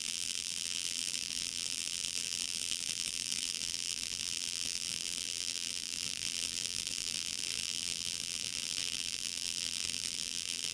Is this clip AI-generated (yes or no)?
yes